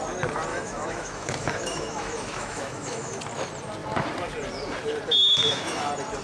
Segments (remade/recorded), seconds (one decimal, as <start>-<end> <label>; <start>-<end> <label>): 0.0-0.5 recorded; 0.5-3.2 remade; 3.2-5.2 recorded; 5.2-5.8 remade; 5.8-6.2 recorded